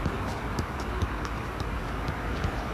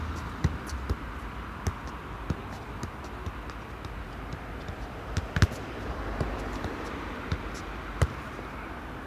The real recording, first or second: second